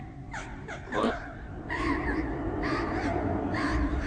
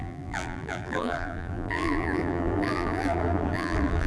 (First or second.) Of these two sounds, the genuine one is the first